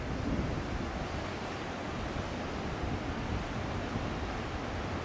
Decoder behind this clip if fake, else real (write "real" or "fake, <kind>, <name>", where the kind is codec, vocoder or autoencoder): real